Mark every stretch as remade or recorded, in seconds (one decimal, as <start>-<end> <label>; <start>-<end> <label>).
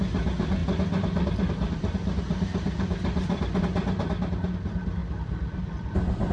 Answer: 0.0-0.6 recorded; 0.6-3.6 remade; 3.6-5.0 recorded; 5.0-6.3 remade